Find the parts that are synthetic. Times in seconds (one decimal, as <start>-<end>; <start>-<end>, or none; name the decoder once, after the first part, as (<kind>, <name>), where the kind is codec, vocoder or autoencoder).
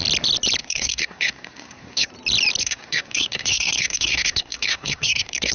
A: 0.6-2.1 (codec, SNAC); 2.6-5.5